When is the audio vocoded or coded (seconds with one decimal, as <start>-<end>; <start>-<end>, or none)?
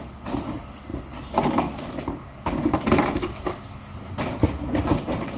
none